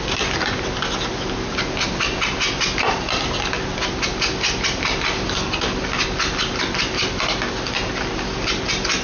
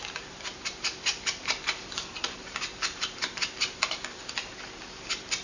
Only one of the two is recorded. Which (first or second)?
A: first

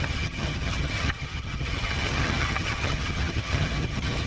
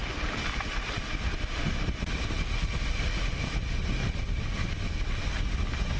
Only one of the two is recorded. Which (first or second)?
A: second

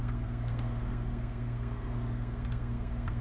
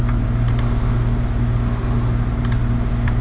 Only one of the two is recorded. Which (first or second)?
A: second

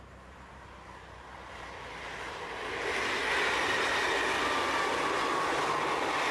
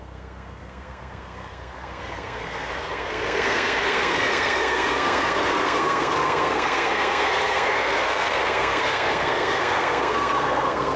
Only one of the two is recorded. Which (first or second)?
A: first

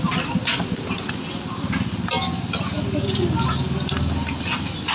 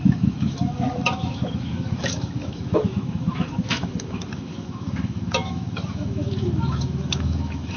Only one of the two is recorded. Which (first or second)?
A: first